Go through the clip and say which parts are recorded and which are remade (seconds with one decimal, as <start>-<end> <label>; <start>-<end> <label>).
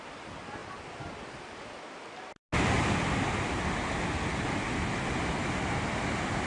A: 0.0-6.5 recorded